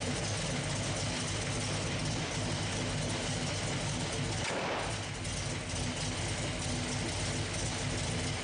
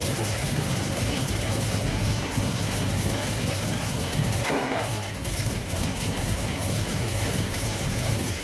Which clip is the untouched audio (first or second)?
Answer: first